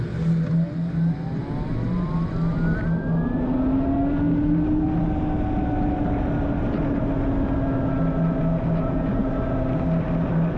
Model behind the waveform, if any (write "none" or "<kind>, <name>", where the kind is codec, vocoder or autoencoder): none